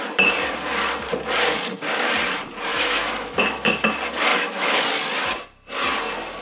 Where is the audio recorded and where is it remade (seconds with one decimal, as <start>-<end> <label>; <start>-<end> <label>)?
0.0-2.7 recorded; 2.7-3.4 remade; 3.4-4.3 recorded; 4.3-4.8 remade; 4.8-6.4 recorded